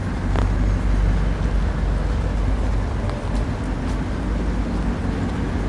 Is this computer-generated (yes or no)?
no